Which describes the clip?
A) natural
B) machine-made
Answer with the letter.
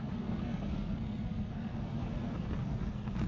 B